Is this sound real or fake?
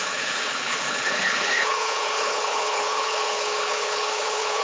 fake